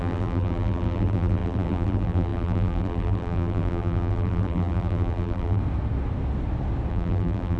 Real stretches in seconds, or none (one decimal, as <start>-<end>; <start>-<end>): 5.6-6.9